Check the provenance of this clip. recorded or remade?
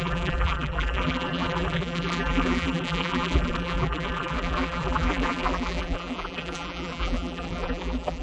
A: remade